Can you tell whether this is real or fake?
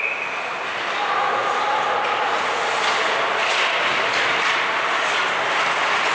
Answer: real